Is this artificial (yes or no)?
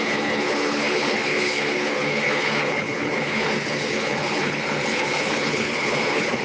yes